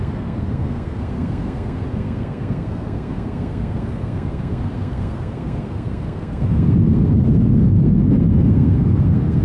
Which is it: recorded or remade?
remade